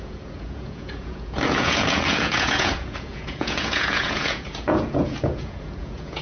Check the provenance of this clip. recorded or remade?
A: remade